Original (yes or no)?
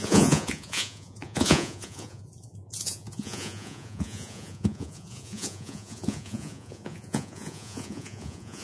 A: no